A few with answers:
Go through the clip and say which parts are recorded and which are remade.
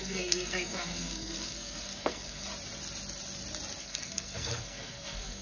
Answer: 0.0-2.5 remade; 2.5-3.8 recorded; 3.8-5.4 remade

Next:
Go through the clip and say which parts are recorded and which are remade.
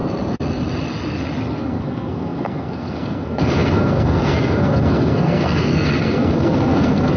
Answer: 0.0-1.6 recorded; 1.6-7.2 remade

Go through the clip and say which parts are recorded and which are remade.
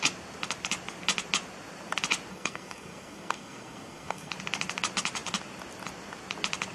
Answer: 0.0-2.3 recorded; 2.3-4.3 remade; 4.3-6.7 recorded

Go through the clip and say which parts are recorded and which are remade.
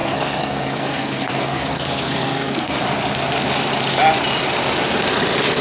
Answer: 0.0-2.8 remade; 2.8-5.6 recorded